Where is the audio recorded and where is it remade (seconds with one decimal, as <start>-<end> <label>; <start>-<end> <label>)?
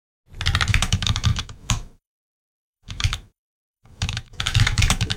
0.0-0.7 recorded; 0.7-5.2 remade